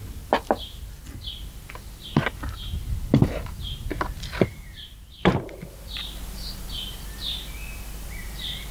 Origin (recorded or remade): recorded